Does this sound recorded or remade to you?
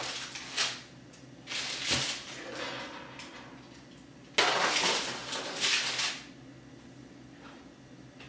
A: recorded